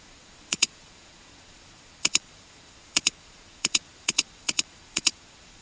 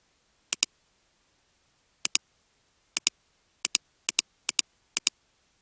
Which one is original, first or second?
second